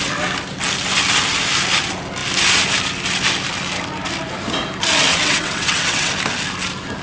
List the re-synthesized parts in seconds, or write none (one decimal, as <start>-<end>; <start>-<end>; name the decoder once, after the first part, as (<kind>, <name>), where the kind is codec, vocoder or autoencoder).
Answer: 5.1-6.1 (vocoder, WaveNeXt)